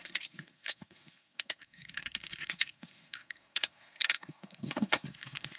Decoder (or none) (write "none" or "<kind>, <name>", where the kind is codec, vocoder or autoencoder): codec, SNAC